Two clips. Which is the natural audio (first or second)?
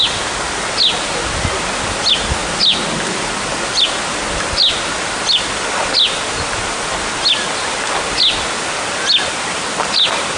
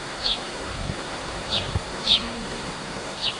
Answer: first